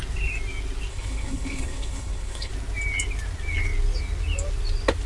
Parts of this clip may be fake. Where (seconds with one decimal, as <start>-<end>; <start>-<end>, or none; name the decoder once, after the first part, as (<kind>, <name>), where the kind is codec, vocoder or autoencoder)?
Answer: 0.9-2.5 (codec, HILCodec)